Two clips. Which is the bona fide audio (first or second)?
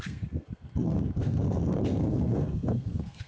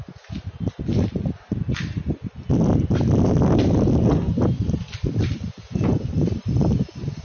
second